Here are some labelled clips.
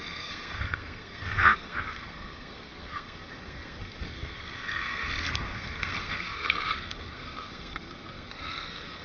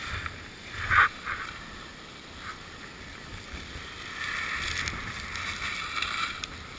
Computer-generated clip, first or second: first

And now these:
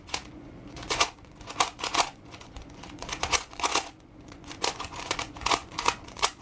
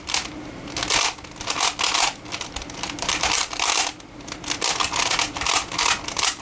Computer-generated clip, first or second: first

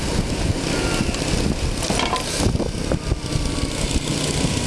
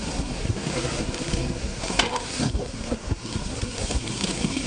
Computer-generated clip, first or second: second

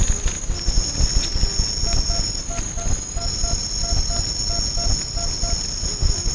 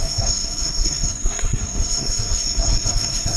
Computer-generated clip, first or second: second